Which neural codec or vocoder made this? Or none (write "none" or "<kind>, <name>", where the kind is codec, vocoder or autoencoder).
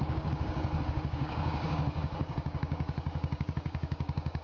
codec, DAC